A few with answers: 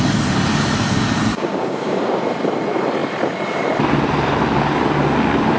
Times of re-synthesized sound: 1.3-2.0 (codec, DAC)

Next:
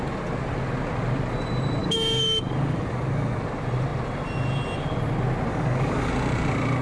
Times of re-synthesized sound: 1.8-3.4 (codec, DAC); 5.5-6.1

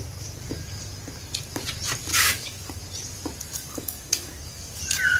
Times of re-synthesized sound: 2.1-2.8 (codec, DAC); 3.4-4.8